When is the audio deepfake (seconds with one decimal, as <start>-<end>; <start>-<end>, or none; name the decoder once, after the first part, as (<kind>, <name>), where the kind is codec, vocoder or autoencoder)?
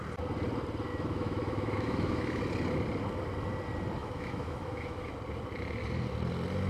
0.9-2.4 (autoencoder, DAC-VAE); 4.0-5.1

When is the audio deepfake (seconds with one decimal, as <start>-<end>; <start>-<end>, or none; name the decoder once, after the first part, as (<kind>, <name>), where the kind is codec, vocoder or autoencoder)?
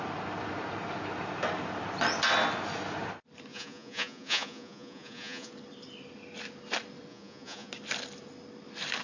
3.5-5.5 (vocoder, Vocos); 7.1-7.7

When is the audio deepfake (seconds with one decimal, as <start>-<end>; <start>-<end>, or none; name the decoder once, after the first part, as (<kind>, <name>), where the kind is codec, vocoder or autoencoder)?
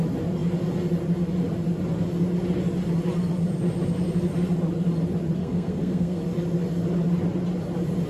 5.4-6.2 (codec, SNAC)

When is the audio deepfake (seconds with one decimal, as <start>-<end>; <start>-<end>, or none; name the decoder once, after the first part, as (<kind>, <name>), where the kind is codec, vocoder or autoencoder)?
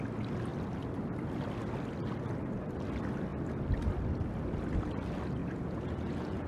5.4-6.5 (vocoder, Vocos)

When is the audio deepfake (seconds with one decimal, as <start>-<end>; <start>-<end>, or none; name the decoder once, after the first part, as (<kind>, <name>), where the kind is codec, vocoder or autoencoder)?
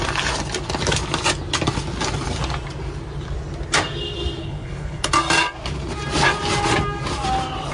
4.4-5.1 (codec, HILCodec)